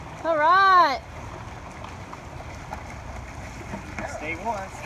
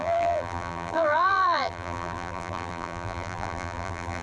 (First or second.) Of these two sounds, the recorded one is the first